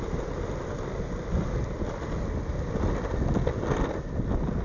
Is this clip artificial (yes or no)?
no